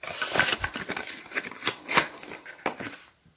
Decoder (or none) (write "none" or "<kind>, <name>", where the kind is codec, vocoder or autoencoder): none